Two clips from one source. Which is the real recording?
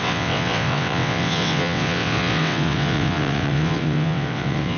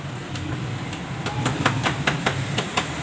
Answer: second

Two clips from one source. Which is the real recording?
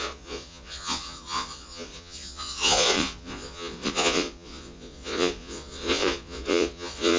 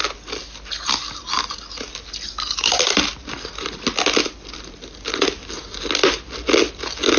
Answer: second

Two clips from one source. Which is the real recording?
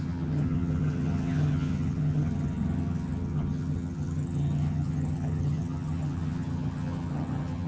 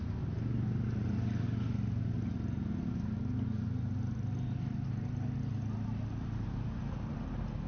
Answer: second